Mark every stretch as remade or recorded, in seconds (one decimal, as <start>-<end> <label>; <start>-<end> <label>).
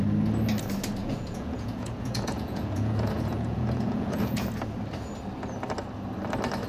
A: 0.0-1.0 recorded; 1.0-4.4 remade; 4.4-6.7 recorded